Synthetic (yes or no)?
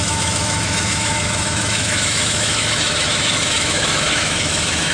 yes